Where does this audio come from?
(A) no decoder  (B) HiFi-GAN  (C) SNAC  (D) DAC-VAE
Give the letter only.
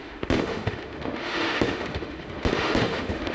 D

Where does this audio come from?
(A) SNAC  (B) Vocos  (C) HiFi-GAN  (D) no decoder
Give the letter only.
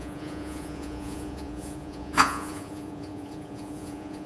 B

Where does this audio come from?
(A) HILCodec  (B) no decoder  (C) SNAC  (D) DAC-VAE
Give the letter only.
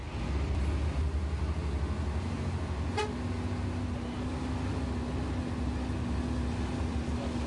B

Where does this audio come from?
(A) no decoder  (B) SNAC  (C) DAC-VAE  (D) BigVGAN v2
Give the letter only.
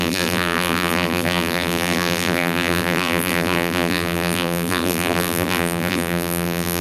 D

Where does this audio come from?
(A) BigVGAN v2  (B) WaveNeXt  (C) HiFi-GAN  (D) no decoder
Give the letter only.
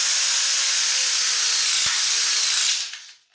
D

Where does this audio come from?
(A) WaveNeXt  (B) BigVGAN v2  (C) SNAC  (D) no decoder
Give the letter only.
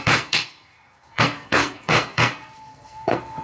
C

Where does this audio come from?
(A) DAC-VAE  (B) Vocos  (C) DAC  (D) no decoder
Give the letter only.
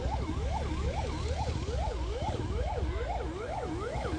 C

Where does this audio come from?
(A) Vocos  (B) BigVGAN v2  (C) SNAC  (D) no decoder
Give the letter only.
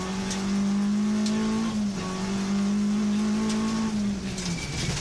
D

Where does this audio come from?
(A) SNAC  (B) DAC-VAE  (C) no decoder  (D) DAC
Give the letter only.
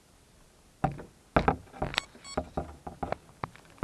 C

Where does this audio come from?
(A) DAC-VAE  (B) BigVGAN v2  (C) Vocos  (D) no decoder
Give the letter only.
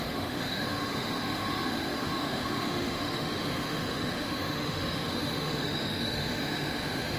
A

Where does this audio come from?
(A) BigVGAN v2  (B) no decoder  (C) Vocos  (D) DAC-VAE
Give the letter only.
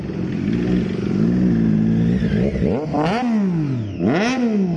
B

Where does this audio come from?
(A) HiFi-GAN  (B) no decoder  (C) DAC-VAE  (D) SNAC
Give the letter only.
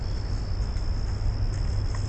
B